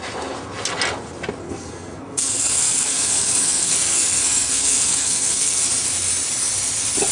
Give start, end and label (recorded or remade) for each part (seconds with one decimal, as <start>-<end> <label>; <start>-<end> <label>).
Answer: 0.0-1.4 recorded; 1.4-5.7 remade; 5.7-7.1 recorded